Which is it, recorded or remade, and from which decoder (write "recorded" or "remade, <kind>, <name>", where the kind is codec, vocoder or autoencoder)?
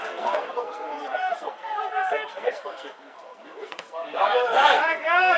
remade, codec, SNAC